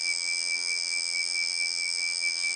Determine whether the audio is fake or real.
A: fake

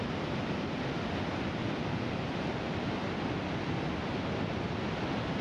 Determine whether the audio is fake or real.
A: real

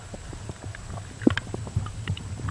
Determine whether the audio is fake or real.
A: real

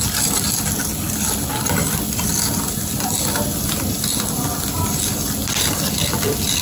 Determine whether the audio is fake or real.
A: real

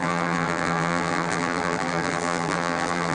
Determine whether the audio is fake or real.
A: fake